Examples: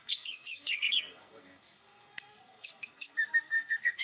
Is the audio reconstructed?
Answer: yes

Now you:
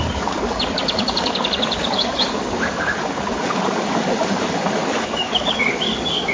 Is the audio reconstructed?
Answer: yes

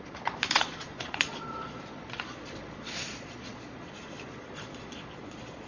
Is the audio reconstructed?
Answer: yes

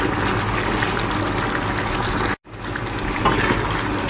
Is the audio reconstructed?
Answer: no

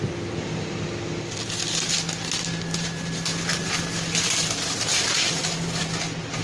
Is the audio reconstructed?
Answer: no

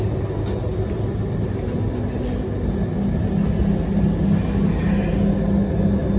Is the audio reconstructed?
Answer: no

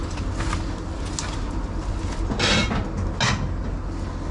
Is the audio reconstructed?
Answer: no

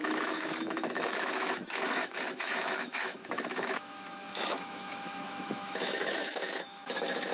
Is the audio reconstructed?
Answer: yes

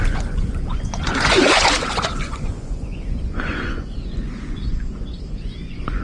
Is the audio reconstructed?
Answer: yes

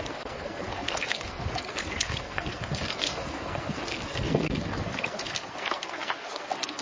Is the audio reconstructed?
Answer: yes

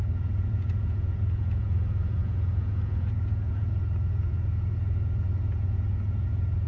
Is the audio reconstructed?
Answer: yes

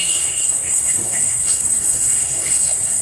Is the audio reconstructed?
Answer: yes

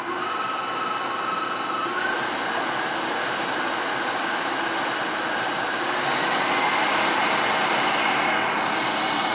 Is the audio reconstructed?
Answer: no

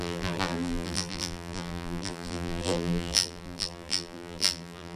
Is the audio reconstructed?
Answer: yes